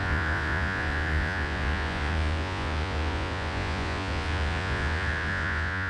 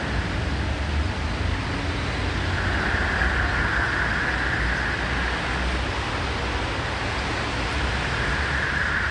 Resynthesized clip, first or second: first